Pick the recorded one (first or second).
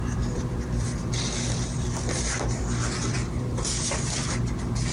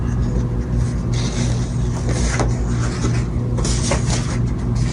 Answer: second